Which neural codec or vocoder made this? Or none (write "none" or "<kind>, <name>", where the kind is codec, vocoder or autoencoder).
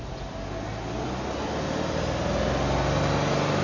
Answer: none